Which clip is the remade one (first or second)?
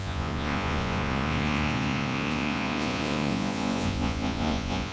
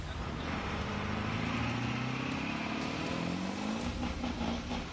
first